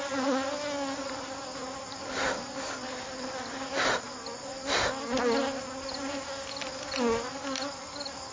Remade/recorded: recorded